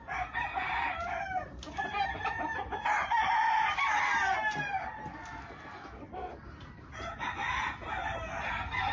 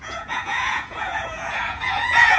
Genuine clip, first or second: first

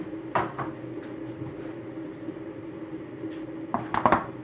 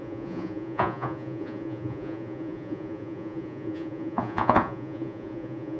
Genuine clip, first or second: first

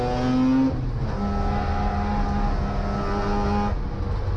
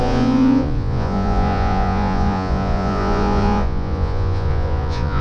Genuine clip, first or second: first